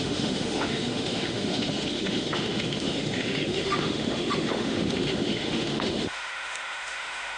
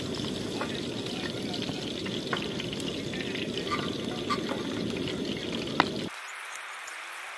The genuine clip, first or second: second